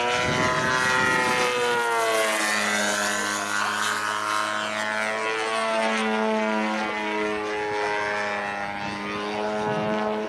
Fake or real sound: real